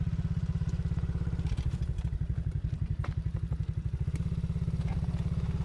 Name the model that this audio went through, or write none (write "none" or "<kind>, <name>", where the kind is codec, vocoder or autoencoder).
vocoder, BigVGAN v2